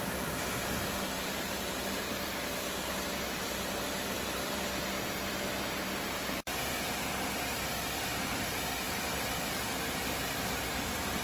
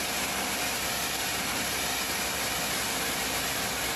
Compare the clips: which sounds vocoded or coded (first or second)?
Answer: first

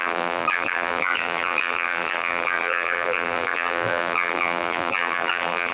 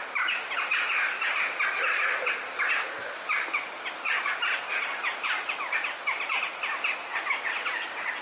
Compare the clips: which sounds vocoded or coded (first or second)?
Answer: first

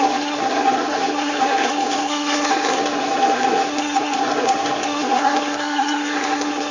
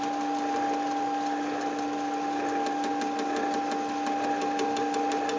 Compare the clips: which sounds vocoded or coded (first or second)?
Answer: first